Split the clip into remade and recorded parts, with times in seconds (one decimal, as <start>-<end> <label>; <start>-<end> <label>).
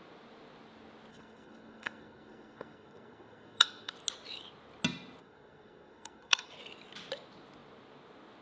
0.0-1.1 recorded; 1.1-3.9 remade; 3.9-5.2 recorded; 5.2-6.5 remade; 6.5-8.4 recorded